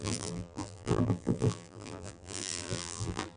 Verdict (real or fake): fake